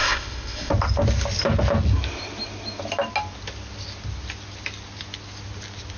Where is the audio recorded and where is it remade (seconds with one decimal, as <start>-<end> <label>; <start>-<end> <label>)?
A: 0.0-0.7 remade; 0.7-6.0 recorded